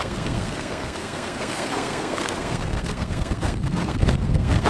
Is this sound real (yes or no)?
no